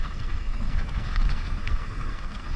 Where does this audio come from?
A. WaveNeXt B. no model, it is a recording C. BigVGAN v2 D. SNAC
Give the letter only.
D